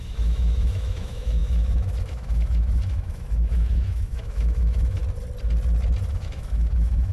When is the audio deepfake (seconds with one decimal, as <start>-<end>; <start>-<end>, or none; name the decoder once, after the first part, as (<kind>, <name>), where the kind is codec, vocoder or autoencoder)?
0.0-5.0 (autoencoder, DAC-VAE); 6.1-7.1